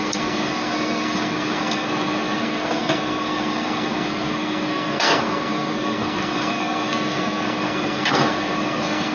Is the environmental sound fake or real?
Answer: fake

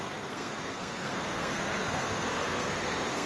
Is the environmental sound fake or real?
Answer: fake